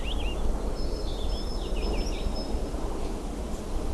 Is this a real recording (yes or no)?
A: yes